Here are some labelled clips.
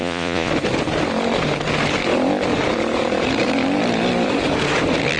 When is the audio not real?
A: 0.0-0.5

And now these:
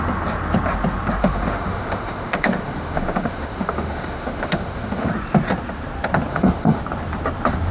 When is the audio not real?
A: 1.2-5.1; 6.3-6.8

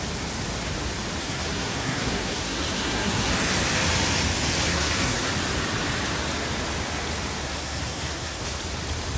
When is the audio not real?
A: 1.2-3.3; 4.7-5.3; 7.4-8.4

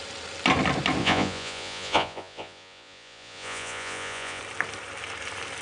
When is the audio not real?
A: 1.0-4.4